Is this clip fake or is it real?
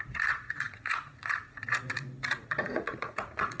fake